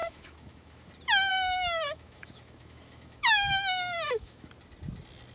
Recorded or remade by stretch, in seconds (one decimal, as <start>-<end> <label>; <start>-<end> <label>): 0.0-0.9 remade; 0.9-1.3 recorded; 1.3-4.5 remade; 4.5-5.3 recorded